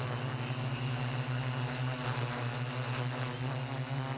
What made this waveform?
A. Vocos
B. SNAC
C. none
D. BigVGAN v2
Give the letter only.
C